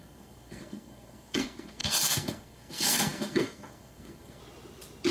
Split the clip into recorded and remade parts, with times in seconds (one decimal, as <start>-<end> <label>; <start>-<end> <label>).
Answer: 0.0-4.4 remade; 4.4-5.1 recorded